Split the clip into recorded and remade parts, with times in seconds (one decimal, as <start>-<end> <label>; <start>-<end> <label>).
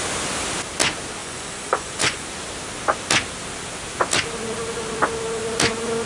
0.0-1.2 recorded; 1.2-2.3 remade; 2.3-6.1 recorded